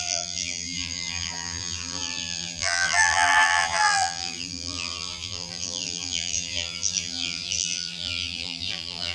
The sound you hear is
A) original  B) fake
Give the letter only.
B